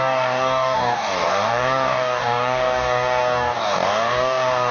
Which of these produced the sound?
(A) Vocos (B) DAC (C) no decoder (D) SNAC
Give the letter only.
B